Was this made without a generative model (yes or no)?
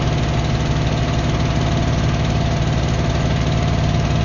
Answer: yes